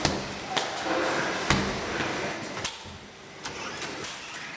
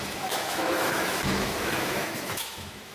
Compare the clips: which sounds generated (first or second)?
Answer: second